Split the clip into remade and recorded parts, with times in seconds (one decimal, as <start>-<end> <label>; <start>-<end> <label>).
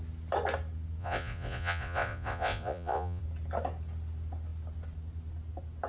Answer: 0.0-1.0 recorded; 1.0-3.2 remade; 3.2-5.9 recorded